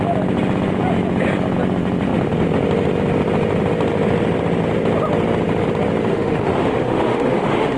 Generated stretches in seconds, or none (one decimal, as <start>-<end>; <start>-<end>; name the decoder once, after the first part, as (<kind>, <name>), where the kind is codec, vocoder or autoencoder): 6.1-7.8 (autoencoder, DAC-VAE)